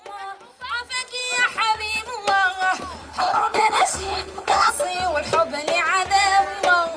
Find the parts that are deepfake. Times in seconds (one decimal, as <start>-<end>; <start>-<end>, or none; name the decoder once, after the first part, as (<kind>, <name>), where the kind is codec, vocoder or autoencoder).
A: 3.0-4.7 (codec, HILCodec)